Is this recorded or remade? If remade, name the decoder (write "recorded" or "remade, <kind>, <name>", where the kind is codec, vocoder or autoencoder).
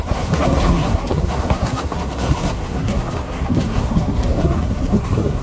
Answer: remade, codec, SNAC